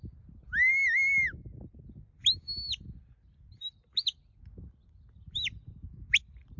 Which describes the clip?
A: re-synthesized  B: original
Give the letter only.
B